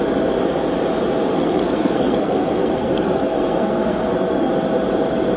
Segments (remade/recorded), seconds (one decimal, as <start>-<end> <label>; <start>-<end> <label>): 0.0-1.3 recorded; 1.3-4.5 remade; 4.5-5.4 recorded